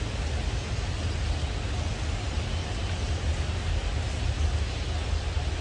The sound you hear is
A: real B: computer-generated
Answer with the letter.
A